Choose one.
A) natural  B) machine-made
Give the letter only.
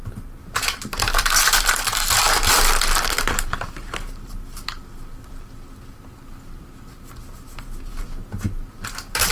A